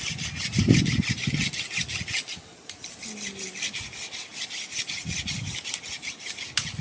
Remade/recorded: recorded